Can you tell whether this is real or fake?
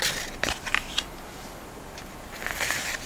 fake